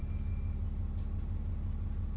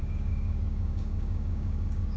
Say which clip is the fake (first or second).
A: second